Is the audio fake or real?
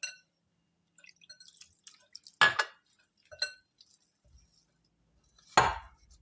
real